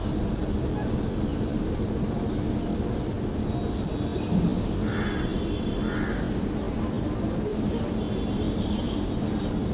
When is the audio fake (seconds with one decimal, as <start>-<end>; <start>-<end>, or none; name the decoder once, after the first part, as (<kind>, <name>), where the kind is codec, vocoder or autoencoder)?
1.3-1.8 (vocoder, BigVGAN v2); 7.5-9.1